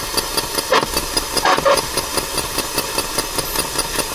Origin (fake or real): real